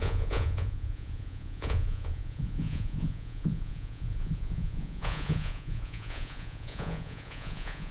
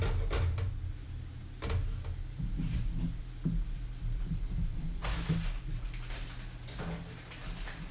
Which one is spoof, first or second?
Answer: first